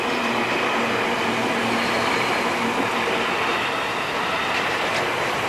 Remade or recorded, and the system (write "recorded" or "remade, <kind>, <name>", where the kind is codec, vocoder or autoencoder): recorded